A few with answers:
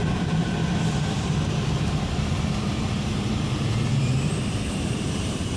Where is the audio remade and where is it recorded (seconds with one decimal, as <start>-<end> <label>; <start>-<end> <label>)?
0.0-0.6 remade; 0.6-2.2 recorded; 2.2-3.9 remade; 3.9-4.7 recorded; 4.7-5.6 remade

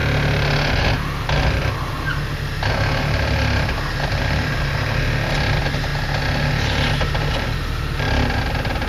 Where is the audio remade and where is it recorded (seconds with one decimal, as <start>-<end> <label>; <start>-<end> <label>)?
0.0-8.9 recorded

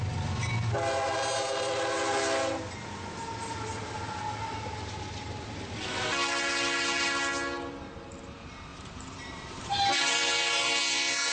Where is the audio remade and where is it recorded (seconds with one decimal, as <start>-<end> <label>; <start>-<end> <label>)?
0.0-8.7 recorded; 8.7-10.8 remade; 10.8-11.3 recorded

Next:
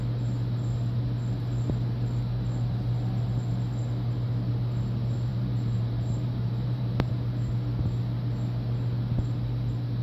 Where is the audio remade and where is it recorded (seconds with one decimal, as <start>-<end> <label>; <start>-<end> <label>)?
0.0-5.3 recorded; 5.3-7.1 remade; 7.1-10.0 recorded

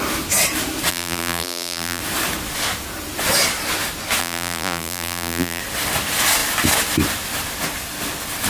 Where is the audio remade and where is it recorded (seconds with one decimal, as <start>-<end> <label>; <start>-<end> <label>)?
0.0-0.9 recorded; 0.9-2.0 remade; 2.0-4.2 recorded; 4.2-5.6 remade; 5.6-8.5 recorded

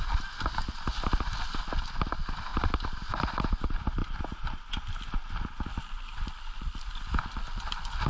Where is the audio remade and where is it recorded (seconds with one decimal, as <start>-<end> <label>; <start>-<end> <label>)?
0.0-0.9 remade; 0.9-2.1 recorded; 2.1-4.0 remade; 4.0-5.8 recorded; 5.8-8.1 remade

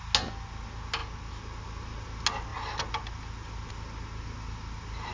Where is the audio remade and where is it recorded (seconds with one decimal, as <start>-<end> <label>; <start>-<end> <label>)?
0.0-5.1 recorded

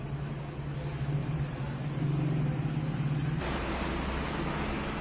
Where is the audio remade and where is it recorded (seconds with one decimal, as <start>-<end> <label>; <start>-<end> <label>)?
0.0-1.2 recorded; 1.2-2.0 remade; 2.0-3.2 recorded; 3.2-3.9 remade; 3.9-5.0 recorded